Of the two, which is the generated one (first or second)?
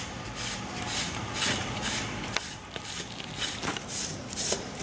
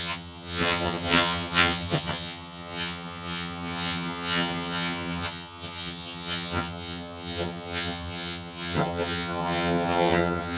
second